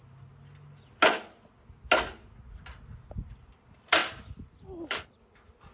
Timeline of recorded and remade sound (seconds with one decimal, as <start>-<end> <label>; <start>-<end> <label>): 0.0-5.7 recorded